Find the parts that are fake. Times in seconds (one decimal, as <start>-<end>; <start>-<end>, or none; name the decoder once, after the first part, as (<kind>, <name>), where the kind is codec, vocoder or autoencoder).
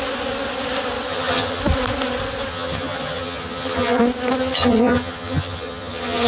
1.1-1.6 (vocoder, HiFi-GAN); 2.5-4.0; 4.4-6.3